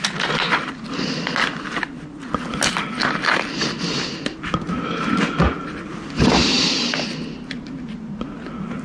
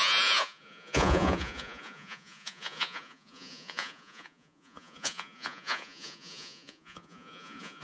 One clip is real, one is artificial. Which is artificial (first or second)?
second